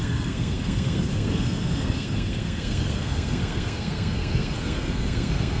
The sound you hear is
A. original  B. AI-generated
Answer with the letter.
B